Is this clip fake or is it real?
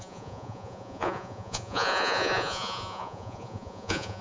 fake